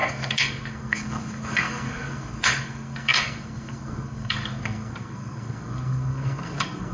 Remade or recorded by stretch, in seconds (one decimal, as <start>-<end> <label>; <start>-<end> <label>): 0.0-6.9 remade